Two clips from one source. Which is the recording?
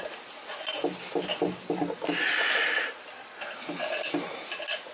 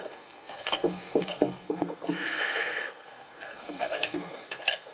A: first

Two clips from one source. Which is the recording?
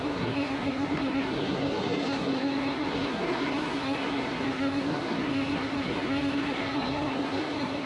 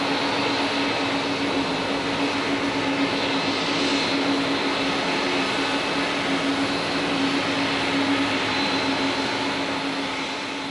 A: second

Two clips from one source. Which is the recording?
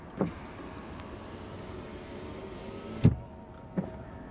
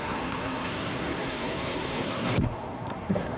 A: first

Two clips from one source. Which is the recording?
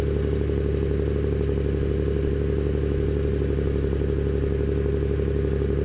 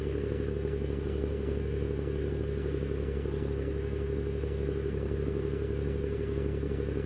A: first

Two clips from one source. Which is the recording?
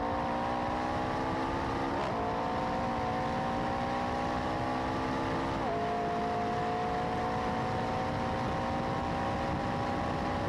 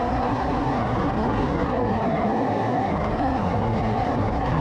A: first